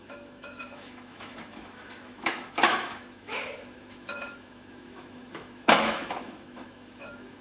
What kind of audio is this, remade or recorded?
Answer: remade